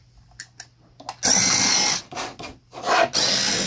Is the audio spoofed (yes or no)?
no